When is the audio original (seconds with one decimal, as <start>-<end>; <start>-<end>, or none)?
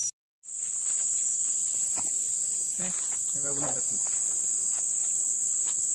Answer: 0.0-5.9